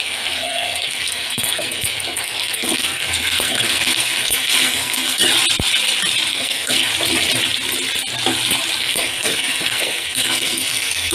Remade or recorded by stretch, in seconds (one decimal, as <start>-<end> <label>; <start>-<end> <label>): 0.0-5.2 remade; 5.2-6.3 recorded; 6.3-6.9 remade; 6.9-8.8 recorded; 8.8-11.1 remade